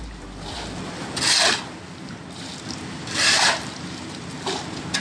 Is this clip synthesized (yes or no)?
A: no